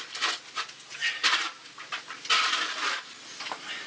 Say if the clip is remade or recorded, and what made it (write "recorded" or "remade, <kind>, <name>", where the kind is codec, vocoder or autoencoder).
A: recorded